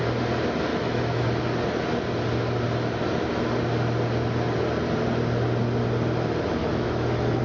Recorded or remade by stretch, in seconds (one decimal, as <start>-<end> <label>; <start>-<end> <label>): 0.0-0.7 recorded; 0.7-1.4 remade; 1.4-6.6 recorded; 6.6-7.4 remade